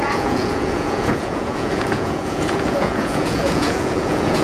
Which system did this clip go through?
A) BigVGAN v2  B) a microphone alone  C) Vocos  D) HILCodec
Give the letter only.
C